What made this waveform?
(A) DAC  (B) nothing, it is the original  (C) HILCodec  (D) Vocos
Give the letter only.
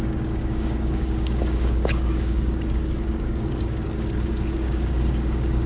A